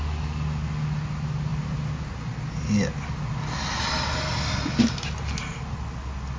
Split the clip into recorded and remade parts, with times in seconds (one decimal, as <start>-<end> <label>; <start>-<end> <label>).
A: 0.0-6.4 recorded